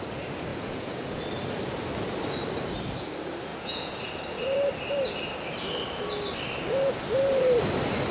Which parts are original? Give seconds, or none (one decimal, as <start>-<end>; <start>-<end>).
0.0-0.5; 1.2-3.5; 4.1-8.1